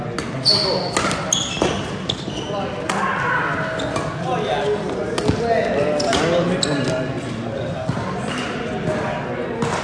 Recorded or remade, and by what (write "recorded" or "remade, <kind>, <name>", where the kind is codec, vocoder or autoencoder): recorded